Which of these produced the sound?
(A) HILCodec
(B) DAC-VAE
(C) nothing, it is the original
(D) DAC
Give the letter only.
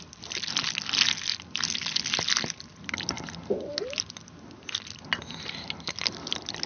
C